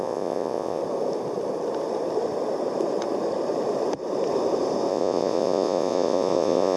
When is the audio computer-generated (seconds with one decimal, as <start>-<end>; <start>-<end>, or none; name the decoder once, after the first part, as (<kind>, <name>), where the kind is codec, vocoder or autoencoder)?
0.0-0.8 (vocoder, Vocos); 4.9-6.8